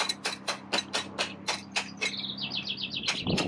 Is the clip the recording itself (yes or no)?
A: yes